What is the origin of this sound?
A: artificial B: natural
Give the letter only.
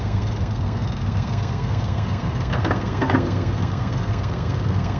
A